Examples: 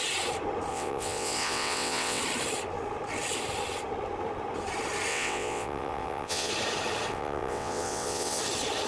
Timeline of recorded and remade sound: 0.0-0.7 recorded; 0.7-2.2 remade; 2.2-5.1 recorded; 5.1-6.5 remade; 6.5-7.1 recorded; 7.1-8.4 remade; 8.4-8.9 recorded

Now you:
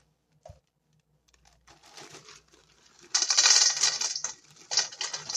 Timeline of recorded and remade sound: 0.0-2.1 recorded; 2.1-3.4 remade; 3.4-5.4 recorded

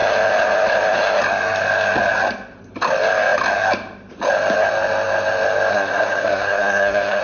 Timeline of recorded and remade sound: 0.0-5.7 recorded; 5.7-7.2 remade

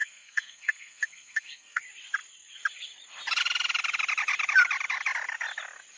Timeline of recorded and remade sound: 0.0-1.8 remade; 1.8-6.0 recorded

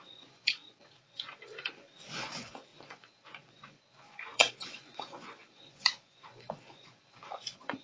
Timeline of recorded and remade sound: 0.0-7.8 remade

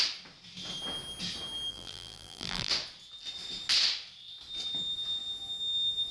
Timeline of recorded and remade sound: 0.0-1.7 recorded; 1.7-2.7 remade; 2.7-6.1 recorded